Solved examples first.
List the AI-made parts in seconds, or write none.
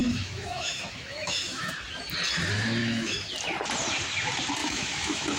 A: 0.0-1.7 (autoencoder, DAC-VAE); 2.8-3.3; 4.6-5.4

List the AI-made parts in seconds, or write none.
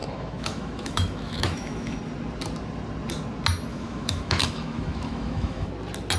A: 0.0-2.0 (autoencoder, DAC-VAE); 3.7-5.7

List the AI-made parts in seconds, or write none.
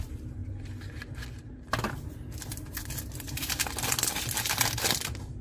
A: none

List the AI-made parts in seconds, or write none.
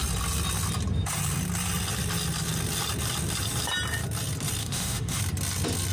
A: 4.6-5.2 (autoencoder, DAC-VAE)